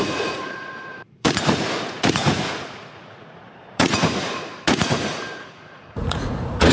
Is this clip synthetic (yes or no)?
yes